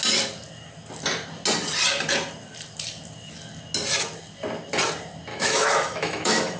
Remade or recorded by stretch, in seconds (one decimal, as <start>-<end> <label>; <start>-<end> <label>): 0.0-5.3 recorded; 5.3-6.6 remade